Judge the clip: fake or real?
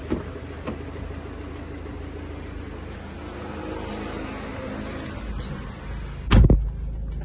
real